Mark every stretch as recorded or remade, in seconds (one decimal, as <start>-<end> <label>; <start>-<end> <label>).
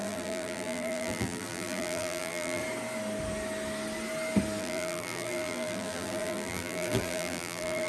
0.0-2.6 remade; 2.6-4.6 recorded; 4.6-7.9 remade